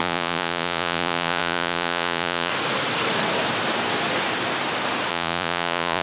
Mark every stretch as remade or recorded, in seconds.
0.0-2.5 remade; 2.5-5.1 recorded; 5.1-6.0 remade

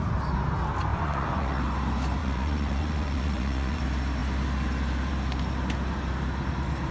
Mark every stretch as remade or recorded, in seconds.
0.0-0.9 recorded; 0.9-1.6 remade; 1.6-2.2 recorded; 2.2-3.8 remade; 3.8-6.9 recorded

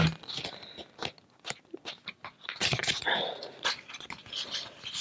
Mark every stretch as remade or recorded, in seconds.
0.0-2.8 recorded; 2.8-3.7 remade; 3.7-5.0 recorded

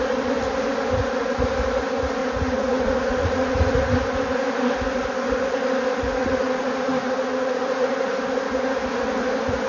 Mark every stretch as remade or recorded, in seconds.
0.0-2.2 recorded; 2.2-3.7 remade; 3.7-6.2 recorded; 6.2-7.9 remade; 7.9-9.7 recorded

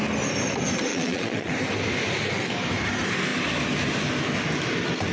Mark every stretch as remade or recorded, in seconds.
0.0-0.9 recorded; 0.9-1.5 remade; 1.5-5.1 recorded

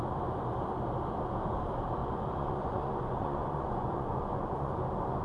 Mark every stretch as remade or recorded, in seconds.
0.0-2.0 recorded; 2.0-4.7 remade; 4.7-5.2 recorded

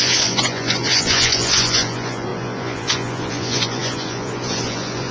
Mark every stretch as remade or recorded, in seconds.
0.0-5.1 remade